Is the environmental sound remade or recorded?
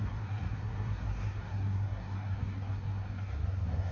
remade